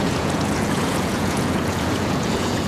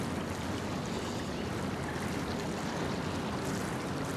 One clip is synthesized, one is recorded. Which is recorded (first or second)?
second